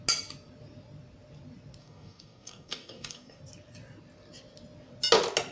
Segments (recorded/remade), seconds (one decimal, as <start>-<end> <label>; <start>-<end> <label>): 0.0-1.8 recorded; 1.8-3.4 remade; 3.4-5.5 recorded